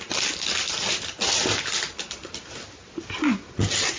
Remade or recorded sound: recorded